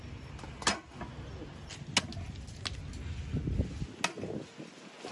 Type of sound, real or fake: real